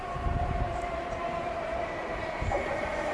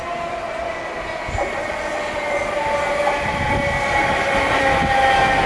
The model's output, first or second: first